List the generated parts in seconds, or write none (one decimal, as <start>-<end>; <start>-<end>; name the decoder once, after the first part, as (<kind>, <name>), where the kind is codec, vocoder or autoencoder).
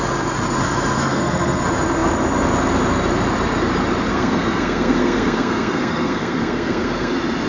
1.0-1.6 (codec, SNAC); 4.1-7.1